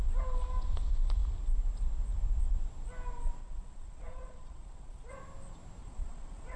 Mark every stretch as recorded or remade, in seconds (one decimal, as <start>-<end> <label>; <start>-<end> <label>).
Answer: 0.0-3.4 recorded; 3.4-5.1 remade; 5.1-5.8 recorded; 5.8-6.6 remade